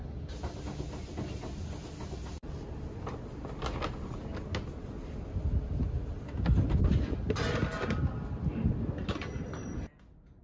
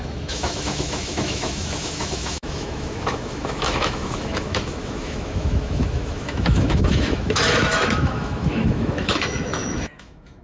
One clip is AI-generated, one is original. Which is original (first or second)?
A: first